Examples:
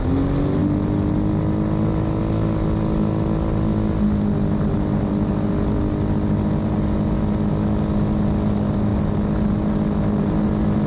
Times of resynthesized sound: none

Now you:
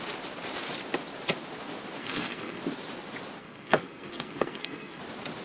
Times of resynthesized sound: 2.0-2.6 (codec, SNAC); 3.4-5.0

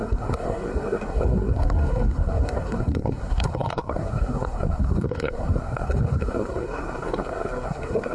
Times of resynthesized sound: 0.0-8.1 (codec, SNAC)

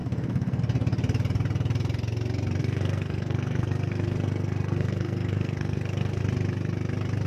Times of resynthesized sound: 0.0-0.6 (codec, SNAC); 2.6-6.2

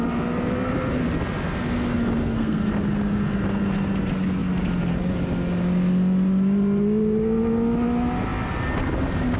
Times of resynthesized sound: 2.2-2.7 (codec, SNAC)